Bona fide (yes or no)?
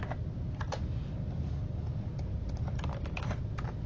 yes